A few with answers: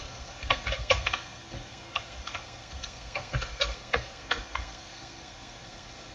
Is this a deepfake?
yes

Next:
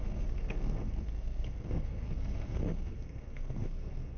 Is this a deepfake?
yes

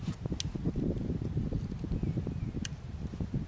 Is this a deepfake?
no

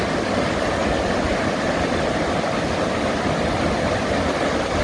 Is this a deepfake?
no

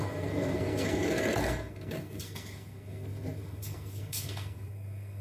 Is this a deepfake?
yes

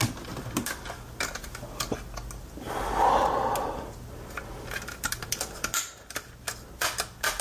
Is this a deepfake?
no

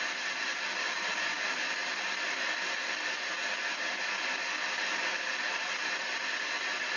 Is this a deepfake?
no